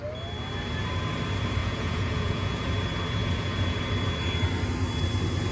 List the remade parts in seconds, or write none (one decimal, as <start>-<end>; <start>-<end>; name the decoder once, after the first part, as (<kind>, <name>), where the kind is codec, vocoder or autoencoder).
1.6-2.7 (vocoder, Vocos); 3.2-3.8